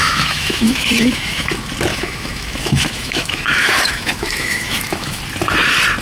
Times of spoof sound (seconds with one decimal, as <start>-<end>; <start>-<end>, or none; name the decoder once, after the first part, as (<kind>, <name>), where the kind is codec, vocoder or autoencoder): 0.0-1.5 (autoencoder, DAC-VAE); 1.9-5.2

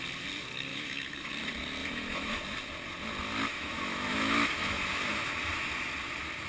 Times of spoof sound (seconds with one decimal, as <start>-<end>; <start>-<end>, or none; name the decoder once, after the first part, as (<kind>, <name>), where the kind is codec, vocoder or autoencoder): 0.7-1.3 (autoencoder, DAC-VAE); 1.8-2.4; 3.5-5.3

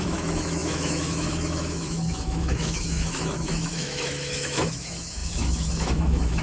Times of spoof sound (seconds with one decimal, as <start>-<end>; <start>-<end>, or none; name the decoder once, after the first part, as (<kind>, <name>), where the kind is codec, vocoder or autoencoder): 0.0-6.4 (autoencoder, DAC-VAE)